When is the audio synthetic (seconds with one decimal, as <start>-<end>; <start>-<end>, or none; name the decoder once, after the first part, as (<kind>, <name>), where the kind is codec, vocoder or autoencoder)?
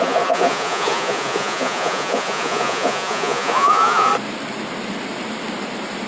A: 0.0-4.1 (vocoder, Vocos)